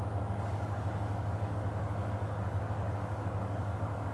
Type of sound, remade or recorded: remade